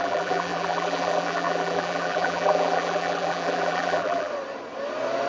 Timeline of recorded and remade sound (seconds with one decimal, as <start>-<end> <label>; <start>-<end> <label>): 0.0-4.3 remade; 4.3-5.3 recorded